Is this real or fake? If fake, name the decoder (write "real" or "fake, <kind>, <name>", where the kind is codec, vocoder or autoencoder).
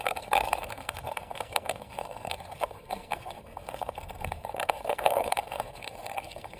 fake, codec, SNAC